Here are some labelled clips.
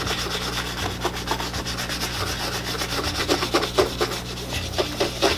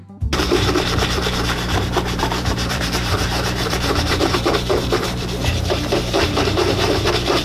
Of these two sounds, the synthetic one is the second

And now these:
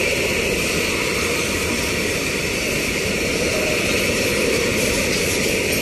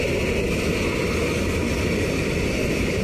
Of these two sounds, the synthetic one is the first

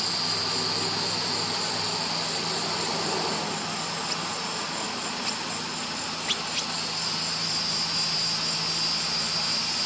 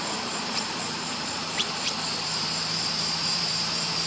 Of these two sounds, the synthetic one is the second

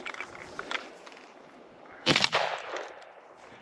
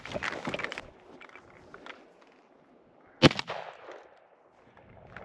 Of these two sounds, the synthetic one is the first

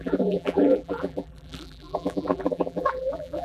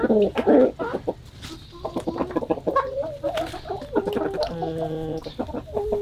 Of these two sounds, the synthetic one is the first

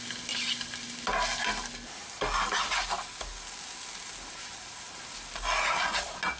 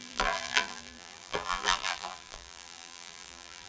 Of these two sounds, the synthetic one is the second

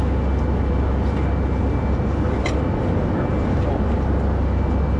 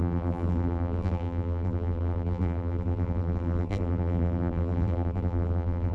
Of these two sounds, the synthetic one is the second